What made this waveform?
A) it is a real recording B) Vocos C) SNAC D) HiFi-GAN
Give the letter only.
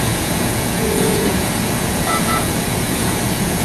B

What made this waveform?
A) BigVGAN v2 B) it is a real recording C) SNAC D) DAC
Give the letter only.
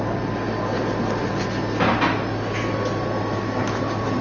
B